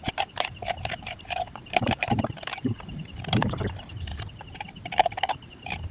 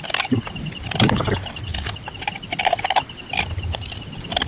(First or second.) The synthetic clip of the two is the first